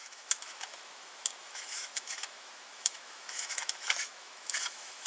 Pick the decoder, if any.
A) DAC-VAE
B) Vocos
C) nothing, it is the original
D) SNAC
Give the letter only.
A